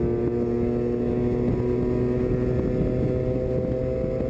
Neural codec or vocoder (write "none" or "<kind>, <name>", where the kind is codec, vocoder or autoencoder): none